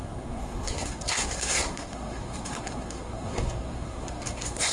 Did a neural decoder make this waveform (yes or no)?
yes